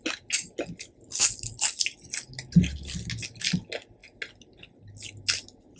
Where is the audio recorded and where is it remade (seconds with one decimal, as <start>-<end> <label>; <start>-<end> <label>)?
0.0-5.8 recorded